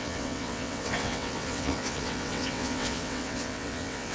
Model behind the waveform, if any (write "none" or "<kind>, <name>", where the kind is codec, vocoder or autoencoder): vocoder, WaveNeXt